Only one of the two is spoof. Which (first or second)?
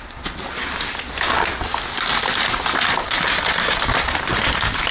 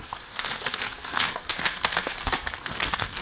second